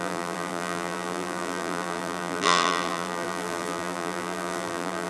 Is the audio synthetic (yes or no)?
yes